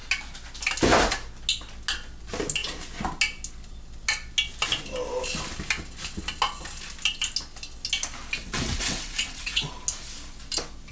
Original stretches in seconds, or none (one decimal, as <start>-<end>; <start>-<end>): 0.0-8.4; 9.7-10.9